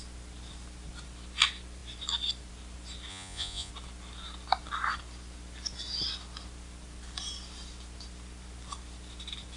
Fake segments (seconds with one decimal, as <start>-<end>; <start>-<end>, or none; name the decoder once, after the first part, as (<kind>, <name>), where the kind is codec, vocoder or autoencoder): 3.1-3.7 (vocoder, Vocos)